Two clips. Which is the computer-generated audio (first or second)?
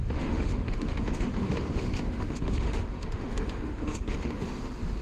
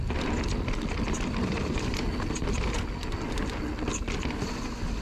first